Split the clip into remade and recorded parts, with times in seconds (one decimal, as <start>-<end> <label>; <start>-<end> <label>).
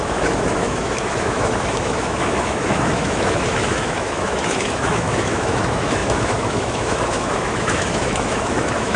0.0-9.0 remade